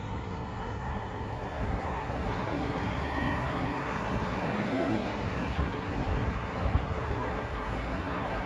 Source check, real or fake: fake